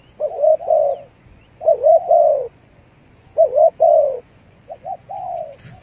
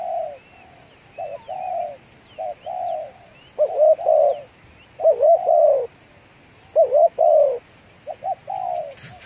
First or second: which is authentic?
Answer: second